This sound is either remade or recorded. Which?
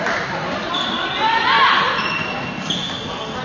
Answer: recorded